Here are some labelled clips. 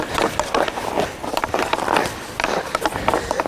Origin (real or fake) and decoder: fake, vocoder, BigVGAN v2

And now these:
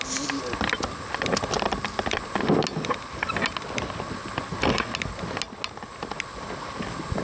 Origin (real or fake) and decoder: real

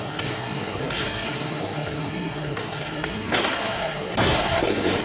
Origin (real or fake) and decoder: fake, codec, SNAC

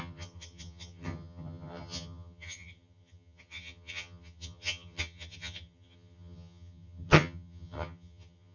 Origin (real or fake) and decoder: fake, vocoder, HiFi-GAN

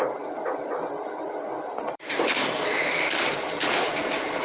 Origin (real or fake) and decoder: fake, vocoder, BigVGAN v2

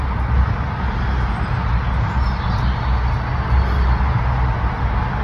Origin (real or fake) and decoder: real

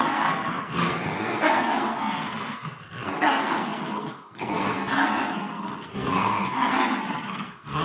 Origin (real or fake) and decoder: fake, codec, SNAC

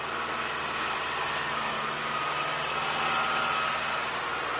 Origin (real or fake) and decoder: real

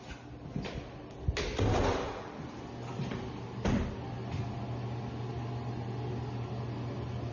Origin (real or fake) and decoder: real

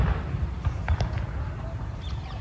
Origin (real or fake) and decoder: real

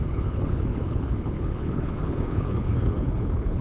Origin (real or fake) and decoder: fake, codec, HILCodec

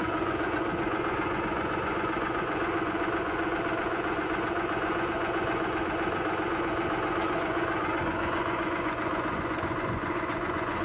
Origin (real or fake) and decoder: fake, vocoder, Vocos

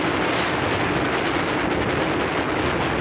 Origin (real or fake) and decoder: real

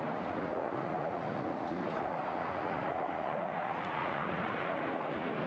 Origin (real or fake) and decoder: fake, vocoder, Vocos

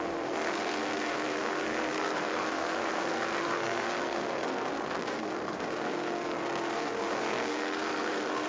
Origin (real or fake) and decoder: fake, codec, SNAC